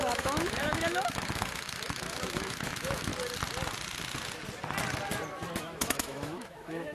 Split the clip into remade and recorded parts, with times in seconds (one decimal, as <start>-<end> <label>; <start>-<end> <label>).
0.0-3.1 remade; 3.1-5.6 recorded; 5.6-6.9 remade